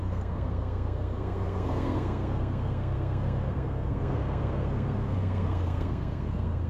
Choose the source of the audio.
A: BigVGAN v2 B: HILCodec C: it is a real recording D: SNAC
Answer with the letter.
D